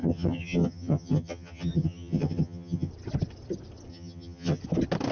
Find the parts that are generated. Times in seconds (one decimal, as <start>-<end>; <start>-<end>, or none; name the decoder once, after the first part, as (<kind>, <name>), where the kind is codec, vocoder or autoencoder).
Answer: 0.0-2.9 (vocoder, HiFi-GAN); 3.9-4.6